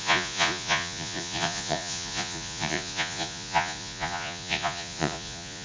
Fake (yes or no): yes